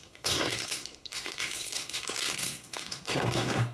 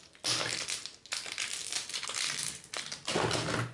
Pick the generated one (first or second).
first